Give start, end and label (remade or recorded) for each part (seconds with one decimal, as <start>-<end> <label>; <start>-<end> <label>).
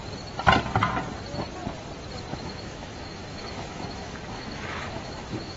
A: 0.0-2.3 recorded; 2.3-5.6 remade